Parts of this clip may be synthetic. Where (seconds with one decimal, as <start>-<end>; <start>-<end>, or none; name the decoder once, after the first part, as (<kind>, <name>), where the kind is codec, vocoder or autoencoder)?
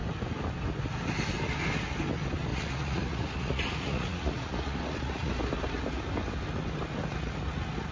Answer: 2.5-5.3 (vocoder, Vocos)